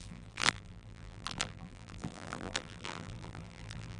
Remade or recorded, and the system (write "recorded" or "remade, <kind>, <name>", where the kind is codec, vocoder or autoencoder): remade, vocoder, BigVGAN v2